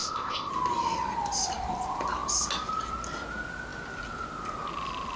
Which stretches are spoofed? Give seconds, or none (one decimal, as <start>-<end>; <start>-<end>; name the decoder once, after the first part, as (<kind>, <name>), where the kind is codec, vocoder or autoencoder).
0.0-0.5 (codec, ZipCodec)